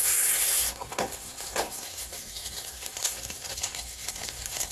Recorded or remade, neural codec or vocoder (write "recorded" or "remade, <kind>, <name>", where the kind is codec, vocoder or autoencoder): remade, codec, SNAC